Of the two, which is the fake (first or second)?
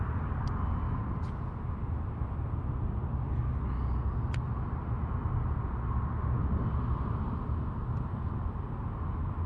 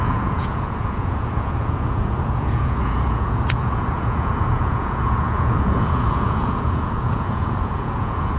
second